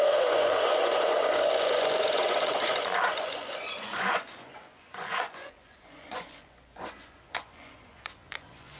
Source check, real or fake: fake